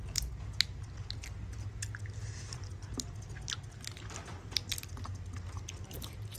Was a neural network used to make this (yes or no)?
no